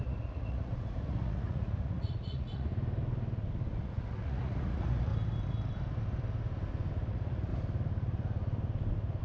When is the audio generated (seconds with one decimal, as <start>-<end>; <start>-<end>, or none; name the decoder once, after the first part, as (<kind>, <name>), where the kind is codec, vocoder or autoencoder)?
0.0-2.7 (vocoder, Vocos); 3.8-5.1; 7.1-7.5